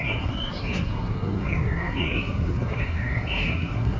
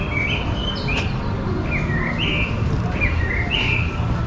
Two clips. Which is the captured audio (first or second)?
second